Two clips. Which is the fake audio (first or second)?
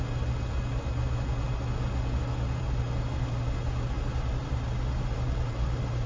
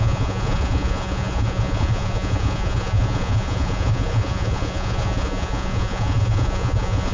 second